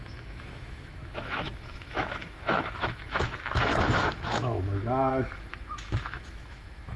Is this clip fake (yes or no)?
yes